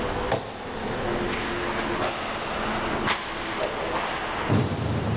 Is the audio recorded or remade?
recorded